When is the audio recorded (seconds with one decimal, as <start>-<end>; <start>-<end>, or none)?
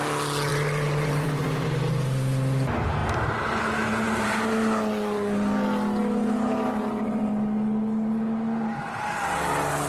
0.0-0.5; 1.9-9.9